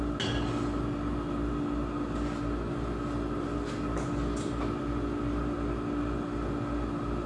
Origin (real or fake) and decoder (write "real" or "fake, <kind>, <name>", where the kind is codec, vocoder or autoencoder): real